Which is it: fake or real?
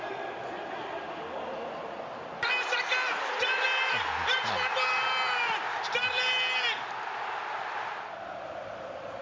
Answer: real